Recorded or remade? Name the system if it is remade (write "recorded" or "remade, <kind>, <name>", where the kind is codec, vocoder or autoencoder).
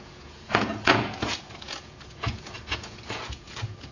remade, vocoder, Vocos